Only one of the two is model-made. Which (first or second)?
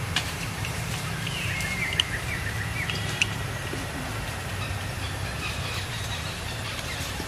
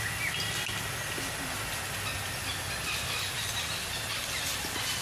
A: first